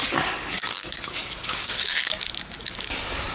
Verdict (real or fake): fake